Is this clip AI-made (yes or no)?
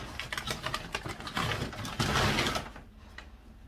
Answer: no